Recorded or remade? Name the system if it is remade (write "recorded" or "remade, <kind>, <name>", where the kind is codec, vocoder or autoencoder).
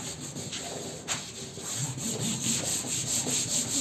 recorded